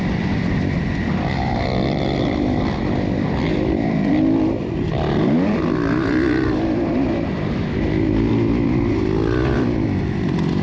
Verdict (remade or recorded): remade